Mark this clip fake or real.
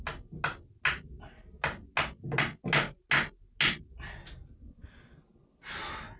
real